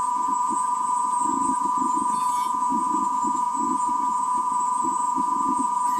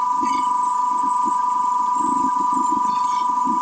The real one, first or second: second